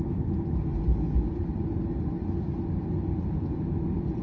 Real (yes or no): yes